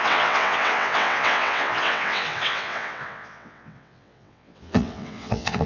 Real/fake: fake